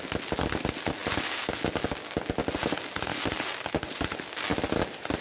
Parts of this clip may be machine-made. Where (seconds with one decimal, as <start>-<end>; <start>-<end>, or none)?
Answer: none